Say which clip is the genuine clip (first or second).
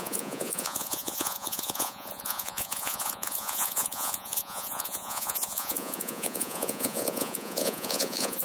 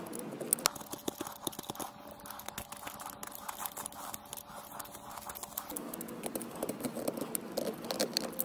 second